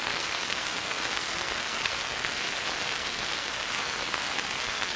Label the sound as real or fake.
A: fake